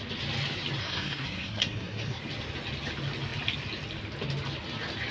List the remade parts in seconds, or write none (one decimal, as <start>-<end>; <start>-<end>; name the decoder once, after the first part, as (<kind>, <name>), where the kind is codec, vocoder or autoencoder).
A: 0.8-2.2 (codec, SNAC)